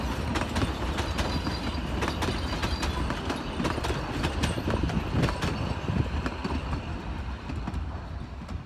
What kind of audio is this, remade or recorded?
recorded